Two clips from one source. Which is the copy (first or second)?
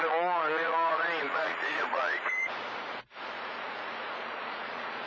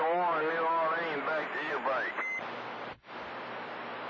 first